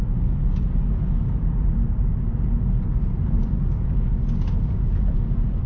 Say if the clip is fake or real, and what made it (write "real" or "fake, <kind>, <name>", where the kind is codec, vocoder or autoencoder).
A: real